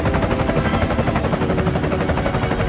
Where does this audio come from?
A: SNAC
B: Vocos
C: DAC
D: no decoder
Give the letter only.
D